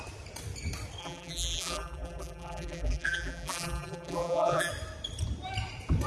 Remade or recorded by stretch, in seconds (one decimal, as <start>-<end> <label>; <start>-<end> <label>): 0.0-1.0 recorded; 1.0-4.7 remade; 4.7-6.1 recorded